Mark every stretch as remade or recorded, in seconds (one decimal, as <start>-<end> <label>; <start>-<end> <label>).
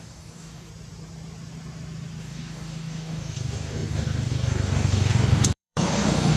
0.0-0.7 remade; 0.7-2.2 recorded; 2.2-6.4 remade